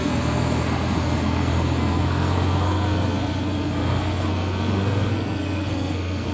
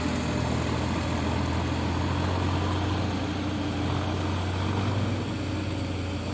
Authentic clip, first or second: second